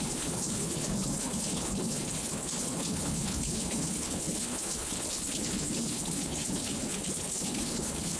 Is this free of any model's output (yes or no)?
no